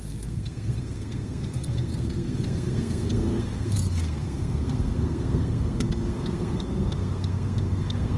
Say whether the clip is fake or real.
fake